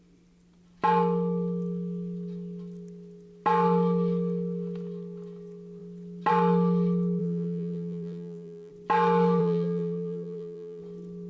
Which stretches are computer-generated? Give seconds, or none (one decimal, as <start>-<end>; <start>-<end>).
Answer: 7.2-8.7; 9.4-10.8